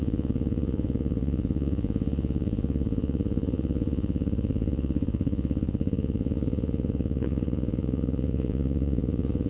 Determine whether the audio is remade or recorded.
remade